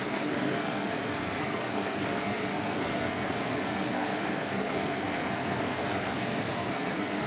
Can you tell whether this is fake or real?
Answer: fake